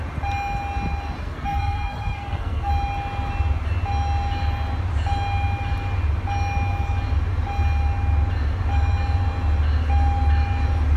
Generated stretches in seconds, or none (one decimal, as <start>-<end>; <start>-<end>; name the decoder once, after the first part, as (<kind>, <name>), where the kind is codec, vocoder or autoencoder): 1.2-2.7 (codec, SNAC)